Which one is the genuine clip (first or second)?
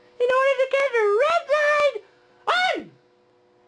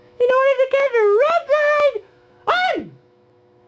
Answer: first